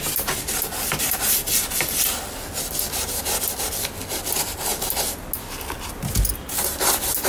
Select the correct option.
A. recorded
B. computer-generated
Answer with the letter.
A